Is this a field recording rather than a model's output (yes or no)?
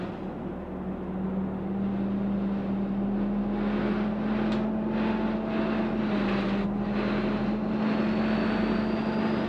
yes